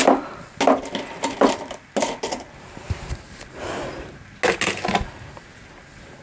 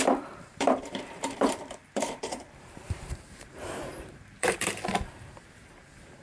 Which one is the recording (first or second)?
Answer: first